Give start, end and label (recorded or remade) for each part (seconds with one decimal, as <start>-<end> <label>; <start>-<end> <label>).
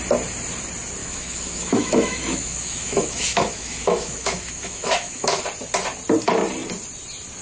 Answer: 0.0-1.0 recorded; 1.0-5.4 remade; 5.4-7.4 recorded